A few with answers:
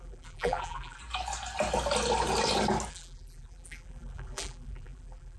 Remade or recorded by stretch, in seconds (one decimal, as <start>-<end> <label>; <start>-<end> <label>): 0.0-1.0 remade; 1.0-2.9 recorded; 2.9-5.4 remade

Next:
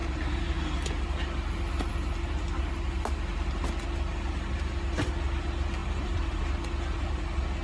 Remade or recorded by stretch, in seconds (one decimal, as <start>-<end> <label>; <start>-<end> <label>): 0.0-5.8 recorded; 5.8-6.4 remade; 6.4-7.6 recorded

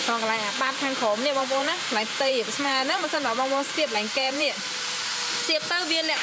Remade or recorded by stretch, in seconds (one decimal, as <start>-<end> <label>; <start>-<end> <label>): 0.0-1.4 recorded; 1.4-5.1 remade; 5.1-6.2 recorded

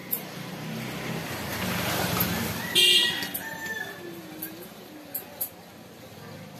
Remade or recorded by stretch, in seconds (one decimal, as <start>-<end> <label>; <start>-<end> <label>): 0.0-6.6 recorded

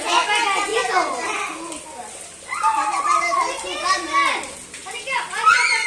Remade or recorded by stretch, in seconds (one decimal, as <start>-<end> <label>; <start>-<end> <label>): 0.0-4.8 recorded; 4.8-5.3 remade; 5.3-5.9 recorded